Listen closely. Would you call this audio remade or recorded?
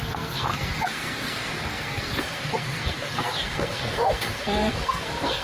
remade